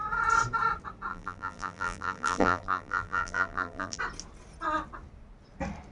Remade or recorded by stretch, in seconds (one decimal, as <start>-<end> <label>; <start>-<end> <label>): 0.0-1.1 recorded; 1.1-4.0 remade; 4.0-5.9 recorded